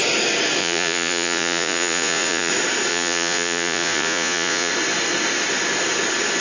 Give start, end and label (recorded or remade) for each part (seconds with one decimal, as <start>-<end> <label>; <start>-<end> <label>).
0.0-0.6 recorded; 0.6-2.5 remade; 2.5-2.9 recorded; 2.9-4.7 remade; 4.7-6.4 recorded